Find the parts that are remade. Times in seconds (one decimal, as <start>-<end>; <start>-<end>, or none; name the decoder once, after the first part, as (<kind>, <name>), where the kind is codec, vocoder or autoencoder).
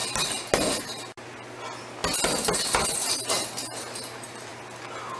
none